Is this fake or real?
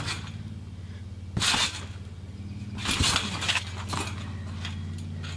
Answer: real